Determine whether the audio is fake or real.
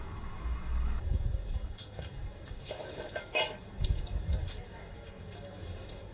fake